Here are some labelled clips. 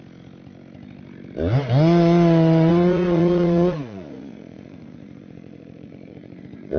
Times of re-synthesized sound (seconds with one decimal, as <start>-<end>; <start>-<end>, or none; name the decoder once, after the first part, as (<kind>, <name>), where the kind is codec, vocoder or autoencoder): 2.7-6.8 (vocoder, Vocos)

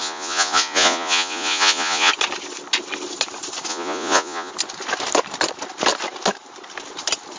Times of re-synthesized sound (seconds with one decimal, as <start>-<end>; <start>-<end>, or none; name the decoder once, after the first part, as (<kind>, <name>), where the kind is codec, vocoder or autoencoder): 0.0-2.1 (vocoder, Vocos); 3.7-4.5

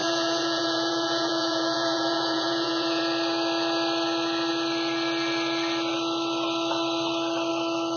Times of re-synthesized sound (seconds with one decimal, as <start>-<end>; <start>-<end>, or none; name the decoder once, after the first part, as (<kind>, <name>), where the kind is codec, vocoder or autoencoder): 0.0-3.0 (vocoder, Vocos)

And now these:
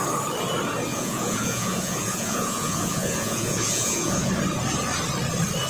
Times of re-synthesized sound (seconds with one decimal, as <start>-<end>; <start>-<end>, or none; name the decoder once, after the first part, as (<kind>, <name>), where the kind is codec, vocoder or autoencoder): 0.9-4.3 (vocoder, Vocos)